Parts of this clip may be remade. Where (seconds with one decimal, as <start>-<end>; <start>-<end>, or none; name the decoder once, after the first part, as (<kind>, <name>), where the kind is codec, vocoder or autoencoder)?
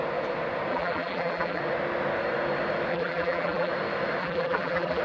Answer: 0.7-1.6 (vocoder, BigVGAN v2); 2.9-3.7; 4.2-5.0